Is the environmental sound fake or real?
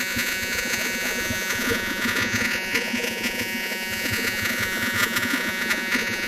fake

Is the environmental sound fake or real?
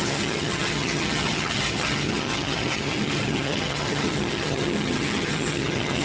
fake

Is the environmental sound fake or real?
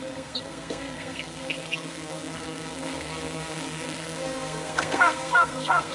fake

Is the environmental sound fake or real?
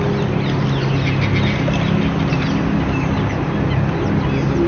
real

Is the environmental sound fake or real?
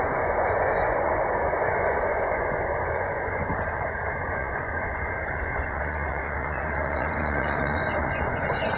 fake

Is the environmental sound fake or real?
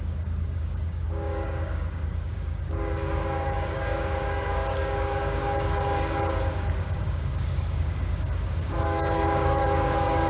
fake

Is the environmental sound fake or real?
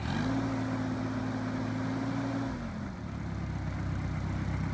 real